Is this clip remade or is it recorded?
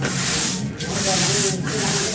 recorded